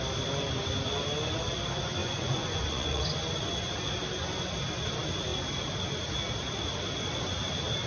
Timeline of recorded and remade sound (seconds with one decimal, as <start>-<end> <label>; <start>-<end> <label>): 0.0-2.0 recorded; 2.0-3.0 remade; 3.0-7.9 recorded